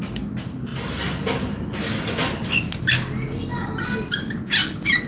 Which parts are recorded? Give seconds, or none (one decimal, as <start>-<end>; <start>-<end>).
0.0-5.1